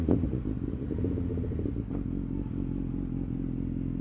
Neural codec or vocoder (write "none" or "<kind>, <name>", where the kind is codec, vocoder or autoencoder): none